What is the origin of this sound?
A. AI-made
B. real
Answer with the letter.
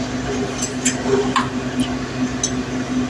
B